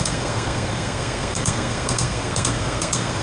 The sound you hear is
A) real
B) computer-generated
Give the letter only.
B